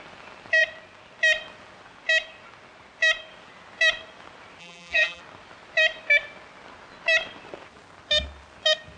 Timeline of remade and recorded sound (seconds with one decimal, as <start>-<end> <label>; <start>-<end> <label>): 0.0-4.6 recorded; 4.6-5.2 remade; 5.2-9.0 recorded